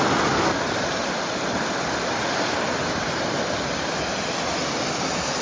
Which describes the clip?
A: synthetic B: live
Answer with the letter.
B